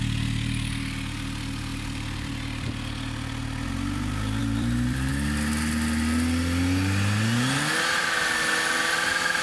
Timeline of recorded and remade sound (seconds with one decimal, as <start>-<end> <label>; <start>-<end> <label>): 0.0-1.7 recorded; 1.7-2.3 remade; 2.3-4.4 recorded; 4.4-5.1 remade; 5.1-9.4 recorded